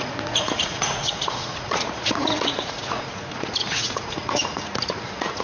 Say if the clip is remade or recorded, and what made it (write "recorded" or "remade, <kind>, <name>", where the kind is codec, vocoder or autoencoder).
remade, vocoder, Vocos